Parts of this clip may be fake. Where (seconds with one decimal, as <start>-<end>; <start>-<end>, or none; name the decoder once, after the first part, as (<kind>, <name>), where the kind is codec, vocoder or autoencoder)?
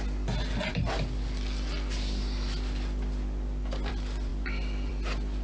none